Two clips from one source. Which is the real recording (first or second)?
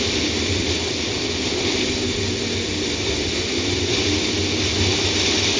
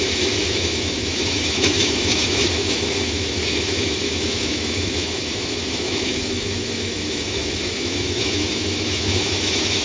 first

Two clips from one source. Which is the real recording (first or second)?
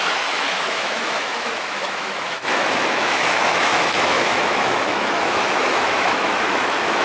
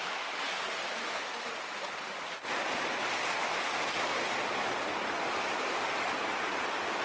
second